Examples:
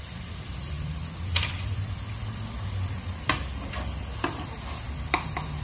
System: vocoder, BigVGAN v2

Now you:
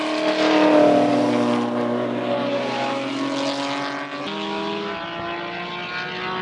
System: none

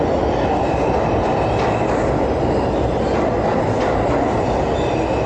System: none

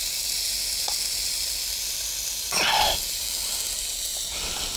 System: none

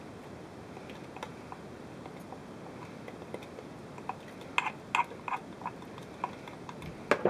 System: none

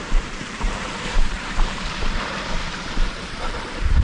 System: vocoder, BigVGAN v2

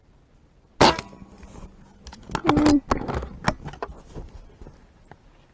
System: none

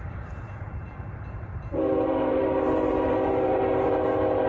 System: vocoder, BigVGAN v2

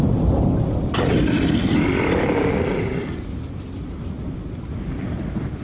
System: none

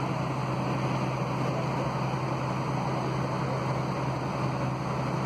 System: none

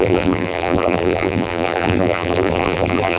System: vocoder, BigVGAN v2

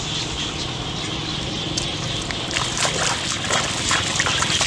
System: none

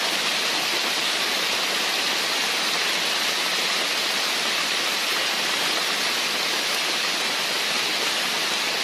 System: none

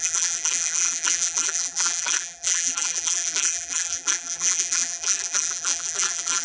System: vocoder, BigVGAN v2